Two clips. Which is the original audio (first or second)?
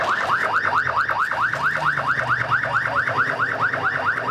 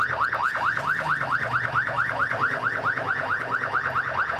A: first